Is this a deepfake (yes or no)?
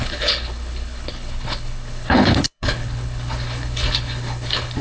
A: yes